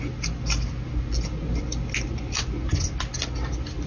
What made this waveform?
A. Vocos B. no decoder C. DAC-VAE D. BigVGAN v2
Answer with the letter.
B